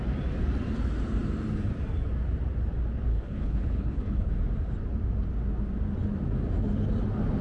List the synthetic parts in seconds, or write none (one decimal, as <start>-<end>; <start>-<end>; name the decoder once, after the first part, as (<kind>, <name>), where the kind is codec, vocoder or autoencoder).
3.1-4.3 (codec, HILCodec)